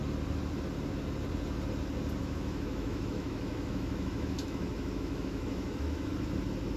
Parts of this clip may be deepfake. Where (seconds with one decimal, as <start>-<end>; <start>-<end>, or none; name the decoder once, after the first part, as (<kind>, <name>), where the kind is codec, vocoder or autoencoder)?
2.2-6.1 (autoencoder, DAC-VAE)

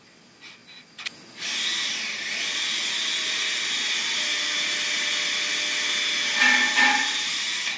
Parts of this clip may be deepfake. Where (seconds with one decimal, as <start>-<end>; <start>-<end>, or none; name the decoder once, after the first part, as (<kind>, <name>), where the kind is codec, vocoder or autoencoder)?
none

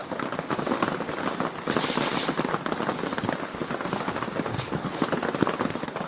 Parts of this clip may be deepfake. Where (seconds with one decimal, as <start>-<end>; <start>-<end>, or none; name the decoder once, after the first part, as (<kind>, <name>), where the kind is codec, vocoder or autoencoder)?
4.5-5.0 (codec, HILCodec)

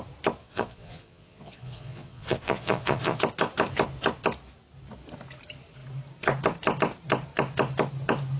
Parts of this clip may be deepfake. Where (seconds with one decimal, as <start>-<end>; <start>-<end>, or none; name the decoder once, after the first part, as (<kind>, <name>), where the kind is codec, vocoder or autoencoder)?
0.4-3.2 (vocoder, Vocos)

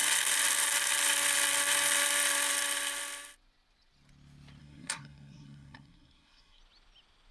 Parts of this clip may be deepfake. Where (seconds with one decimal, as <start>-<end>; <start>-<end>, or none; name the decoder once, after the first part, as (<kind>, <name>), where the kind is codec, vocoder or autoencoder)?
4.6-6.6 (codec, SNAC)

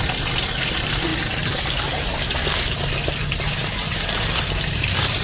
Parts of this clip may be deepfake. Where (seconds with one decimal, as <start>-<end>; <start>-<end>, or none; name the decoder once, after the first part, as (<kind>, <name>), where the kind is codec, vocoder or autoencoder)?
0.0-1.1 (vocoder, BigVGAN v2); 4.0-5.2

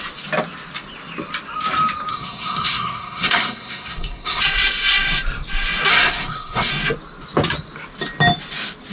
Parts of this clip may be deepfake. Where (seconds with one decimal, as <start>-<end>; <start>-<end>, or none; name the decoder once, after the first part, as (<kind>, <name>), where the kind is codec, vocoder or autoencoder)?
2.1-4.4 (codec, SNAC); 5.9-6.7